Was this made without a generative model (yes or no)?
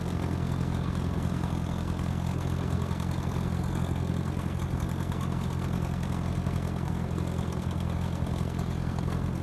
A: no